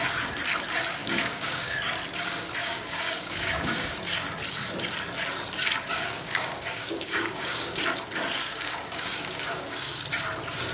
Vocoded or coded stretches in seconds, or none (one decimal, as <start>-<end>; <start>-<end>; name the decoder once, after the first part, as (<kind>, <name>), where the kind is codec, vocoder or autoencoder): 1.0-1.8 (codec, DAC); 2.6-3.9; 5.9-7.8; 8.5-10.0